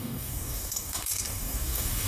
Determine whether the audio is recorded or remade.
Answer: remade